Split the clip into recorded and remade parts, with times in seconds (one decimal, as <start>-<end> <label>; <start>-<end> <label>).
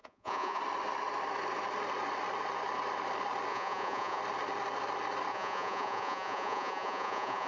0.0-0.6 remade; 0.6-3.5 recorded; 3.5-4.2 remade; 4.2-5.3 recorded; 5.3-7.5 remade